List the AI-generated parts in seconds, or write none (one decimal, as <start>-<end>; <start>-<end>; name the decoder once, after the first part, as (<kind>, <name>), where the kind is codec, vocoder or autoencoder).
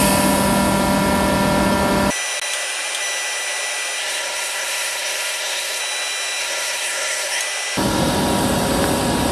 4.0-5.8 (codec, SNAC); 6.4-7.4